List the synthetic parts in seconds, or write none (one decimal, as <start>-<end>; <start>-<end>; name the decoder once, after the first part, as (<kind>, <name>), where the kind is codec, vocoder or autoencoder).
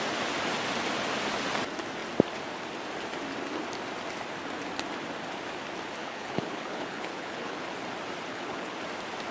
6.0-7.7 (codec, HILCodec); 8.3-8.8